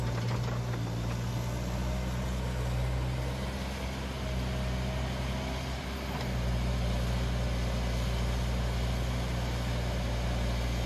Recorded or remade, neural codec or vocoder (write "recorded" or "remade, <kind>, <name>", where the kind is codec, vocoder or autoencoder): recorded